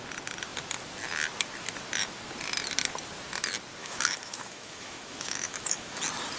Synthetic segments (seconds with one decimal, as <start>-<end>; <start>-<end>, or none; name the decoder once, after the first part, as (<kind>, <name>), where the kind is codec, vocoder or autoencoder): 3.8-6.0 (autoencoder, DAC-VAE)